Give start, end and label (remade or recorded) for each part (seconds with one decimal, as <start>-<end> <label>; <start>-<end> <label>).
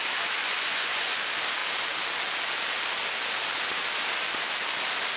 0.0-0.4 recorded; 0.4-1.2 remade; 1.2-5.2 recorded